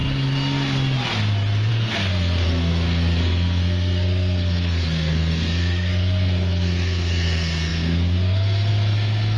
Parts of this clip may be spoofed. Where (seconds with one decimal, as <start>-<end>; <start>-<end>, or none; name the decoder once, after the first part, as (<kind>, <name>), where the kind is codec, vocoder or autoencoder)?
1.7-9.4 (codec, SNAC)